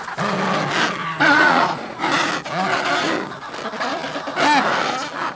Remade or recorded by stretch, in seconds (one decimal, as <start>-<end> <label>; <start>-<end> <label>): 0.0-1.0 recorded; 1.0-2.3 remade; 2.3-5.4 recorded